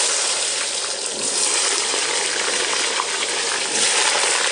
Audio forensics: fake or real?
real